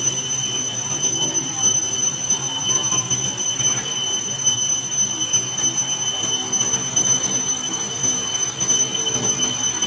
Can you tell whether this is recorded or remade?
recorded